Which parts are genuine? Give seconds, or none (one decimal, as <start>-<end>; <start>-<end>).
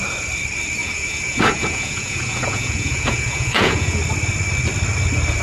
0.0-0.8; 4.0-5.4